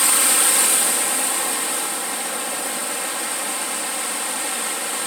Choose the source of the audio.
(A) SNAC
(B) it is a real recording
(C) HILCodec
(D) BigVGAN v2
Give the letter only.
B